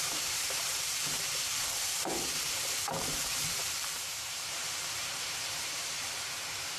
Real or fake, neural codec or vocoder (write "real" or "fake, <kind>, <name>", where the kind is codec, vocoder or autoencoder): fake, vocoder, BigVGAN v2